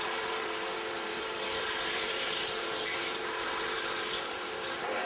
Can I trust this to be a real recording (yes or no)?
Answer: no